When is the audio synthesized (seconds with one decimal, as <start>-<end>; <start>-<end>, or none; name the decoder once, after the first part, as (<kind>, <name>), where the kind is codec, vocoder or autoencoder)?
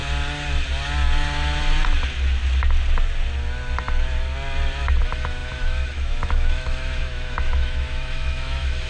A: 5.0-8.9 (autoencoder, DAC-VAE)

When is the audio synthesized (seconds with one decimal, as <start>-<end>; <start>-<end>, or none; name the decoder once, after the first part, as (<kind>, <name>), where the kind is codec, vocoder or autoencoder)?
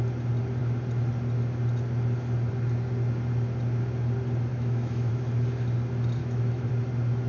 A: 4.5-5.1 (autoencoder, DAC-VAE); 6.2-6.7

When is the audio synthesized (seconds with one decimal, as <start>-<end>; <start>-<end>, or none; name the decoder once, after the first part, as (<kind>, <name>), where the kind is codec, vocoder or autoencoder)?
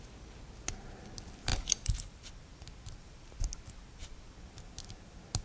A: 1.5-2.3 (vocoder, BigVGAN v2)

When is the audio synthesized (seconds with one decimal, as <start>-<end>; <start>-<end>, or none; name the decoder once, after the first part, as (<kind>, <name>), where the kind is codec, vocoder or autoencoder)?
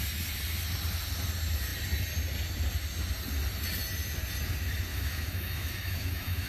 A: 4.9-6.5 (autoencoder, DAC-VAE)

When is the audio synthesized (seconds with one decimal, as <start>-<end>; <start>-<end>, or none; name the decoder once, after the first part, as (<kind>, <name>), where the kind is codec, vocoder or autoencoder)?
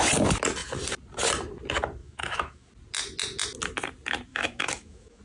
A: 2.0-2.7 (autoencoder, DAC-VAE); 4.3-5.2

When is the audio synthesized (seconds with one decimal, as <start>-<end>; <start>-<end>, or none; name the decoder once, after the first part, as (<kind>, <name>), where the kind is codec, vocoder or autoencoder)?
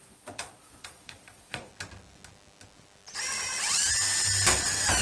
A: 0.0-1.7 (vocoder, Vocos)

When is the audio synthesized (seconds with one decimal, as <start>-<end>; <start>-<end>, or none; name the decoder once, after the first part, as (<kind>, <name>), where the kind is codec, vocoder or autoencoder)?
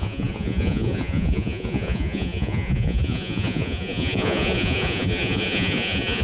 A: 0.0-6.2 (vocoder, Vocos)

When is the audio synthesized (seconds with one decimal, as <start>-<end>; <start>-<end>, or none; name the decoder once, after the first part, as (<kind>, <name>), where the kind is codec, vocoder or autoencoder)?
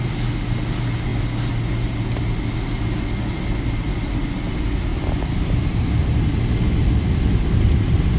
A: none